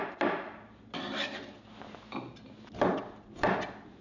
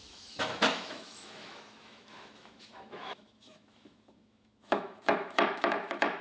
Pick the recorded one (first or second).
first